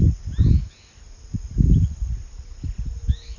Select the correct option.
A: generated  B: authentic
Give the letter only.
B